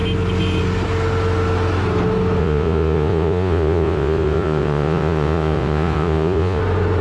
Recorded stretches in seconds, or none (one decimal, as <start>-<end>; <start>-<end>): 0.0-2.4; 6.6-7.0